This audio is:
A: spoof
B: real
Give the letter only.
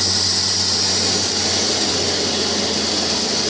B